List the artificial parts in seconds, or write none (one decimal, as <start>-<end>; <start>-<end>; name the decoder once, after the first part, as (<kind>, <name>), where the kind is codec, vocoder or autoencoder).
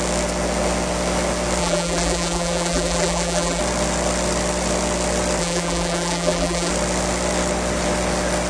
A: 1.6-3.6 (vocoder, BigVGAN v2); 5.4-6.7